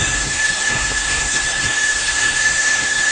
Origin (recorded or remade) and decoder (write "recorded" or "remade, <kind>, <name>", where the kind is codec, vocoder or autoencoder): remade, codec, SNAC